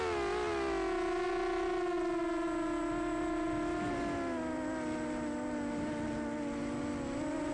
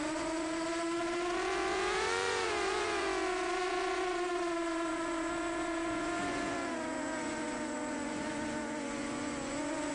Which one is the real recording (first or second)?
first